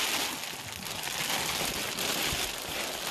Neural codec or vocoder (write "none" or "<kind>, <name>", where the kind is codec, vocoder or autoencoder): none